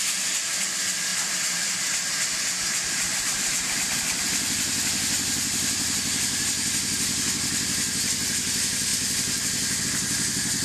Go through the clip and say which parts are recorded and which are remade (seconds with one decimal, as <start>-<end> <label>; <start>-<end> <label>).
0.0-10.6 recorded